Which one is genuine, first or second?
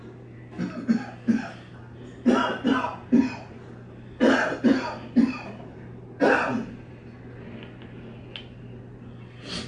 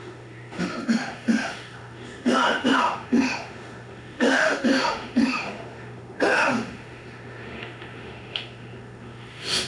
first